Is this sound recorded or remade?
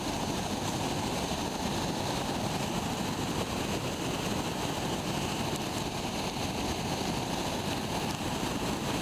recorded